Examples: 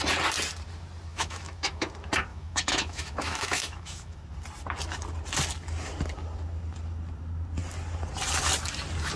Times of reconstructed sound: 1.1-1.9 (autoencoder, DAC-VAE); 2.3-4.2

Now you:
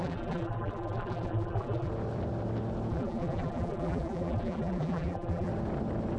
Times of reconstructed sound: 0.0-1.9 (vocoder, BigVGAN v2); 2.9-5.5

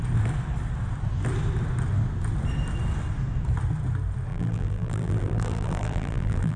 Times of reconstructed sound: 4.3-6.6 (vocoder, BigVGAN v2)

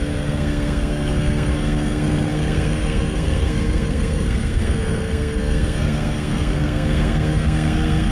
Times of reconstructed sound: 0.0-8.1 (codec, SNAC)